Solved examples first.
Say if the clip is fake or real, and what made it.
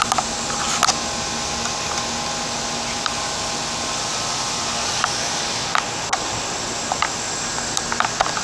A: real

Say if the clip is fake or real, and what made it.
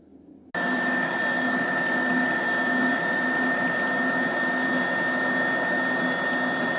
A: real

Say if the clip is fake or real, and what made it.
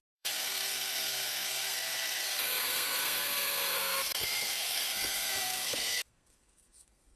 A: fake, codec, SNAC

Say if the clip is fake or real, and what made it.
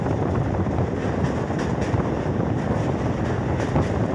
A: real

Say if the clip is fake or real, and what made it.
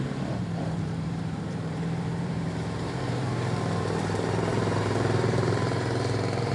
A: fake, vocoder, BigVGAN v2